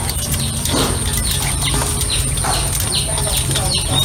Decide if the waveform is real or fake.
real